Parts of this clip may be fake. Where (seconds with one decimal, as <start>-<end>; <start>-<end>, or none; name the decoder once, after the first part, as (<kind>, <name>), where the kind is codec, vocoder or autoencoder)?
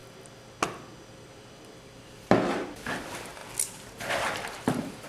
1.1-3.4 (vocoder, BigVGAN v2); 4.1-5.1